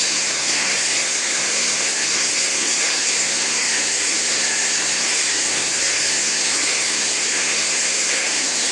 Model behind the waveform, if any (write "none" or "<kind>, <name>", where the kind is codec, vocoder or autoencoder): codec, SNAC